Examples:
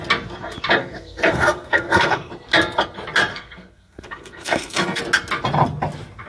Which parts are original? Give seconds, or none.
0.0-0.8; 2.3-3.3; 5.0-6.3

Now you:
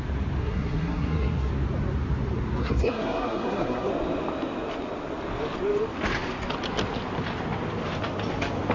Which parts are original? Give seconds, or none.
0.0-0.4; 1.5-2.6; 3.9-8.7